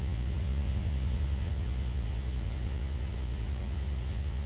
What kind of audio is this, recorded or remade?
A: remade